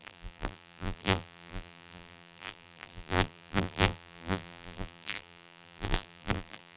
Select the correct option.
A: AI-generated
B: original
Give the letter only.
A